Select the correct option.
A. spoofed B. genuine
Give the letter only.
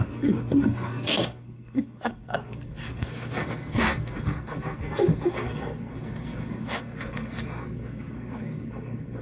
A